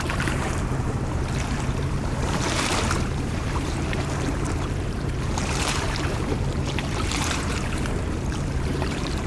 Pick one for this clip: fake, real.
fake